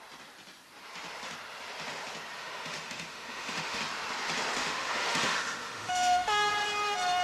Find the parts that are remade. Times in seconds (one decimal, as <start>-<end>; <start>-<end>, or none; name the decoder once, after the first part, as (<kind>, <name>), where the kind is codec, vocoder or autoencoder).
2.4-3.8 (autoencoder, DAC-VAE); 4.6-6.5